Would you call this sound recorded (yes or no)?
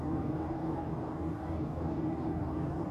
no